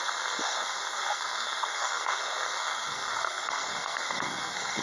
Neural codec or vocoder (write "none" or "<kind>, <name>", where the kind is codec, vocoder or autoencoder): codec, SNAC